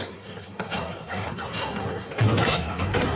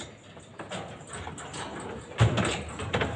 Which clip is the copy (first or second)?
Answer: first